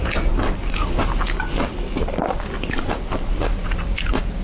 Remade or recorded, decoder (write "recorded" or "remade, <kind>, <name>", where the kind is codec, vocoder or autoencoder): recorded